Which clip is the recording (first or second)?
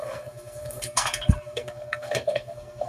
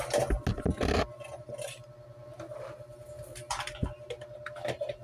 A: second